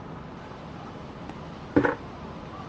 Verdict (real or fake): real